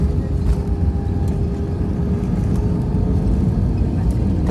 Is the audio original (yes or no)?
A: yes